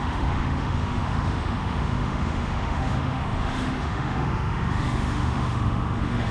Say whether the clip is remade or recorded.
remade